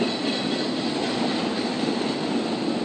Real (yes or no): yes